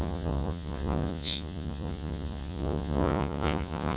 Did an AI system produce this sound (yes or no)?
yes